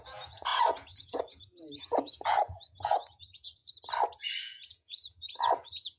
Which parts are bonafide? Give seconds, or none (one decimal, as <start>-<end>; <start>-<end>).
3.6-4.4